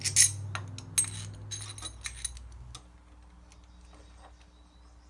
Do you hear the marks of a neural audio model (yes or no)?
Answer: no